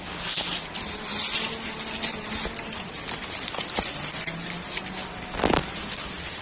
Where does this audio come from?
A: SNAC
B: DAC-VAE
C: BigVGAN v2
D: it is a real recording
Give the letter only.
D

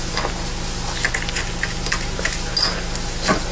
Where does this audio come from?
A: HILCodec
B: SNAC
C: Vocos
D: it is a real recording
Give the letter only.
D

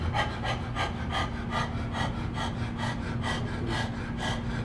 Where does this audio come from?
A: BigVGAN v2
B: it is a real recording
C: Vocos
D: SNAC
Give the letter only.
B